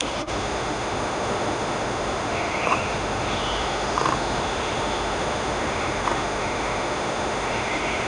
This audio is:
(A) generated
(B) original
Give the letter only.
A